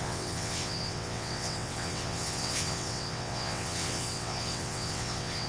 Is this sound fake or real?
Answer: fake